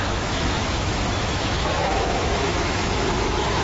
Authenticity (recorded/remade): remade